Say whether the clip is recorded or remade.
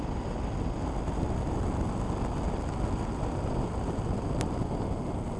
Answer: recorded